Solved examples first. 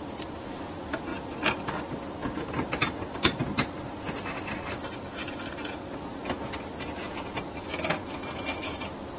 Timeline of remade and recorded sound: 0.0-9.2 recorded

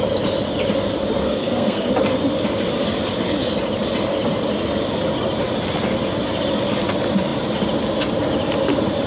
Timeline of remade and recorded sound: 0.0-1.2 recorded; 1.2-1.9 remade; 1.9-9.1 recorded